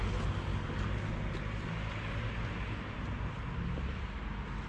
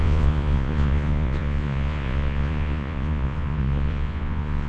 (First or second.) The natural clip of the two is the first